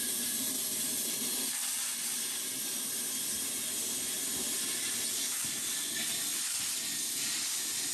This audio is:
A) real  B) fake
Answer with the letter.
A